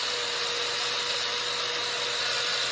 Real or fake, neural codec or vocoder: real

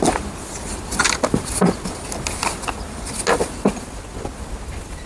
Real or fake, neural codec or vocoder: real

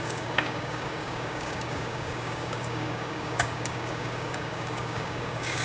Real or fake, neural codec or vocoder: fake, codec, DAC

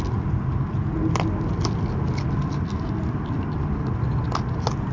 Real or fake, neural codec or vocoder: real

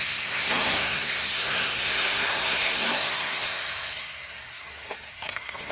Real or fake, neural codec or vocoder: fake, codec, SNAC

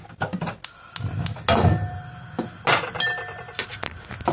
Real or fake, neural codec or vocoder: real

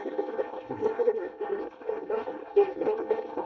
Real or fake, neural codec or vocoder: fake, codec, SNAC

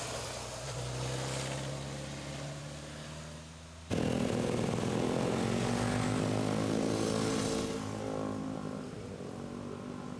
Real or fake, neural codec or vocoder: real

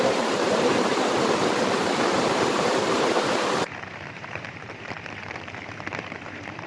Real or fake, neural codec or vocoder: fake, vocoder, BigVGAN v2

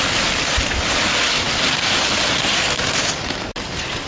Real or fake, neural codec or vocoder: real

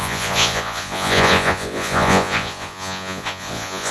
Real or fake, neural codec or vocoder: fake, vocoder, Vocos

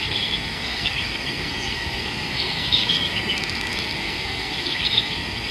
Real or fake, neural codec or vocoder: fake, codec, SNAC